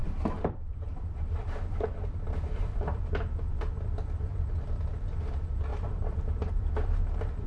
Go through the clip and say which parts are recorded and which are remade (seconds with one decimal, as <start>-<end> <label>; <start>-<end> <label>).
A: 0.0-3.6 remade; 3.6-5.7 recorded; 5.7-6.5 remade; 6.5-7.5 recorded